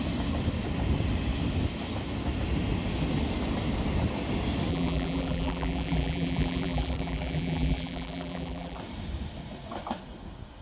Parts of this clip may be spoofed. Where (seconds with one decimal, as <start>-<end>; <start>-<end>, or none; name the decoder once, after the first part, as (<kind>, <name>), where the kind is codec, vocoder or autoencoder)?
4.7-8.8 (vocoder, BigVGAN v2)